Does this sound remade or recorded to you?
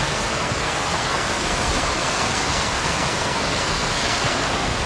remade